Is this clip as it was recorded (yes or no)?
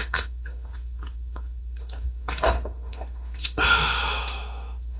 no